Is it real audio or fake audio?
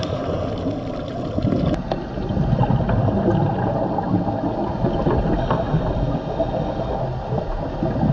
real